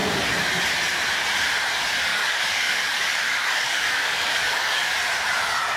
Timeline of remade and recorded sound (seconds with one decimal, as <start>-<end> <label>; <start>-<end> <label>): 0.0-2.1 recorded; 2.1-4.9 remade; 4.9-5.8 recorded